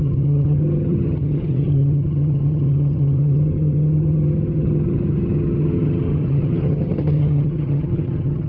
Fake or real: fake